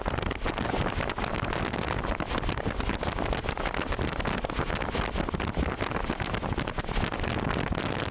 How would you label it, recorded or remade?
recorded